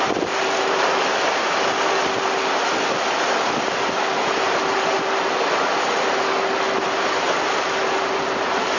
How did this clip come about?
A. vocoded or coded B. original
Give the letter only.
B